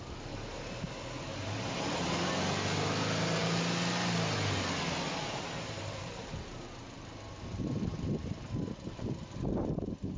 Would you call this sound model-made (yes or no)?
no